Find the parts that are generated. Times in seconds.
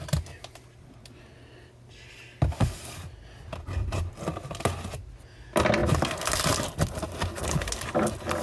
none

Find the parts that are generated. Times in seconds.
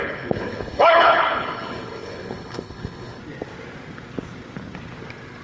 0.0-3.2 (codec, HILCodec)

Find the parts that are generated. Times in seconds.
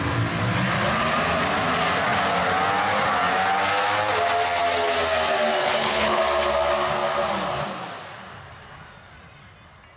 5.6-6.2 (codec, HILCodec)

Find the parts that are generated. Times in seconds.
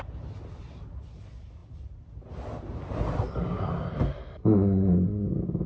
none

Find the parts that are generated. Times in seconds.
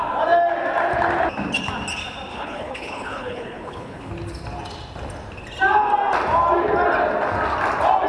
2.3-4.1 (codec, HILCodec)